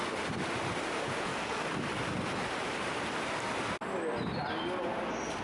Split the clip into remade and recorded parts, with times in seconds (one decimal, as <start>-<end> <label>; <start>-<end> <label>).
0.0-1.3 recorded; 1.3-2.0 remade; 2.0-5.4 recorded